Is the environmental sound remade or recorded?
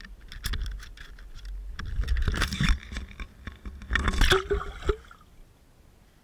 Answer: recorded